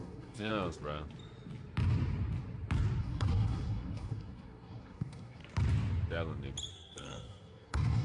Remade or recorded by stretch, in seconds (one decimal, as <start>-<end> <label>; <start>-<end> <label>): 0.0-0.5 remade; 0.5-3.0 recorded; 3.0-5.4 remade; 5.4-6.7 recorded; 6.7-8.0 remade

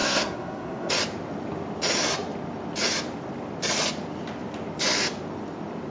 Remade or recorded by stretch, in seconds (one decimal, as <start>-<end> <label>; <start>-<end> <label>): 0.0-0.9 remade; 0.9-5.9 recorded

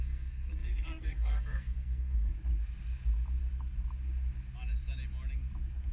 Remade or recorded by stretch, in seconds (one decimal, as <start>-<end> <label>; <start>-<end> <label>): 0.0-2.3 remade; 2.3-5.9 recorded

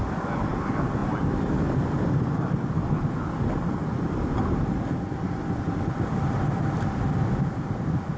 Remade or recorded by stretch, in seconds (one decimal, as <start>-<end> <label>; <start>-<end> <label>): 0.0-8.2 recorded

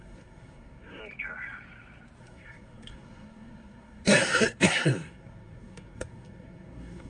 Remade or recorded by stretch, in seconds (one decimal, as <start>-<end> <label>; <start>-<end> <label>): 0.0-1.0 remade; 1.0-2.2 recorded; 2.2-7.1 remade